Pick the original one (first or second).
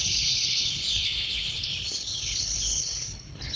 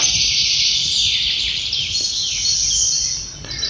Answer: second